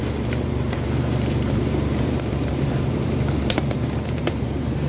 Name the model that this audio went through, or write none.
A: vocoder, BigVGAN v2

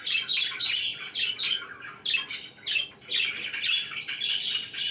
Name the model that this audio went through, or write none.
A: none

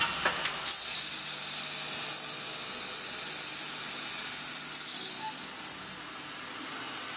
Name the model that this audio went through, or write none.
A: none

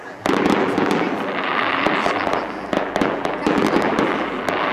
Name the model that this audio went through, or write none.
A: vocoder, BigVGAN v2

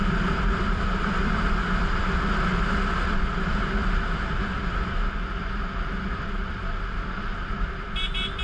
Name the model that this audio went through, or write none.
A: vocoder, BigVGAN v2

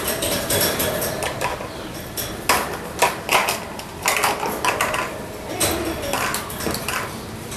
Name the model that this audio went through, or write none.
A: none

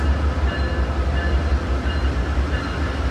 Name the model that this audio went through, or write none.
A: none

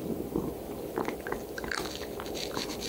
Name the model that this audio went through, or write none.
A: vocoder, BigVGAN v2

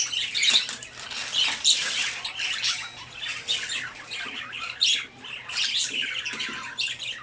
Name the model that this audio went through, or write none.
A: none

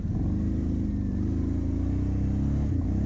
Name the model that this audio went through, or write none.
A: none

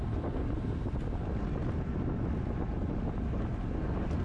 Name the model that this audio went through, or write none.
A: none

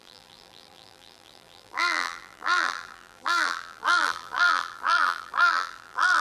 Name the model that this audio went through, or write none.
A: vocoder, BigVGAN v2